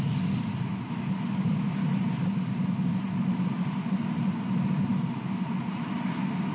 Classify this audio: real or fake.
real